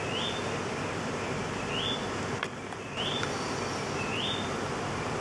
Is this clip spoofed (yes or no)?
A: no